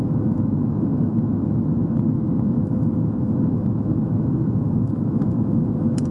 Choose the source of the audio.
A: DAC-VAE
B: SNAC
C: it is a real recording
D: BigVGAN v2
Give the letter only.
A